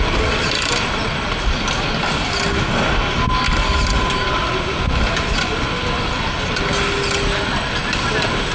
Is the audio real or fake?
real